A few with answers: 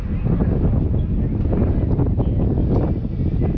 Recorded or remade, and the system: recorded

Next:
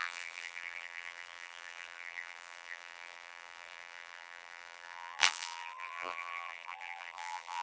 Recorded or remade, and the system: remade, vocoder, BigVGAN v2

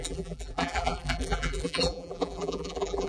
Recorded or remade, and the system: remade, vocoder, BigVGAN v2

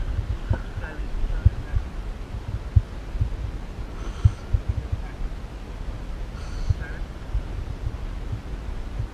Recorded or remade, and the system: recorded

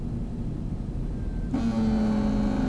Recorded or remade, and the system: recorded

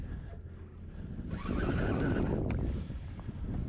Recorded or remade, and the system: recorded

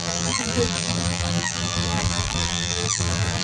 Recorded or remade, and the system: remade, vocoder, BigVGAN v2